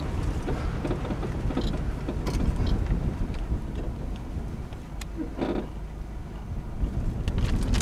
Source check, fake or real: real